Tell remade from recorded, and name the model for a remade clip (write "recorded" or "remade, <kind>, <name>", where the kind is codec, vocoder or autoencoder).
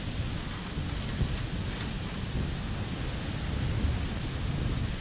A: recorded